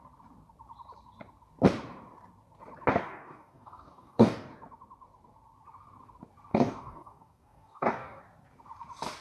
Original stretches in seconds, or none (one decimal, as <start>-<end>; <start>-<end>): 0.0-3.0; 4.5-6.5; 8.2-9.2